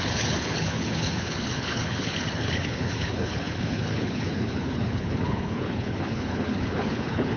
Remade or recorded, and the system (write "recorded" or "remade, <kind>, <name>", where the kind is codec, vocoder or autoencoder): remade, codec, HILCodec